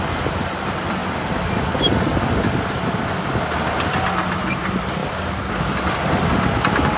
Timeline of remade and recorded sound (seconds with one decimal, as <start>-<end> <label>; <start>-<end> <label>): 0.0-5.0 recorded; 5.0-5.5 remade; 5.5-7.0 recorded

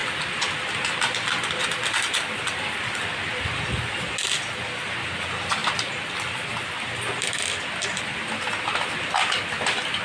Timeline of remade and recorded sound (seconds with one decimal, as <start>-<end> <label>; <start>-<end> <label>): 0.0-2.9 remade; 2.9-5.6 recorded; 5.6-8.5 remade; 8.5-10.0 recorded

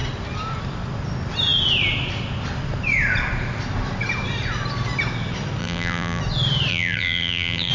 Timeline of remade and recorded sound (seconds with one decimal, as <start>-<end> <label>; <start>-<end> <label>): 0.0-5.6 recorded; 5.6-6.2 remade; 6.2-6.7 recorded; 6.7-7.7 remade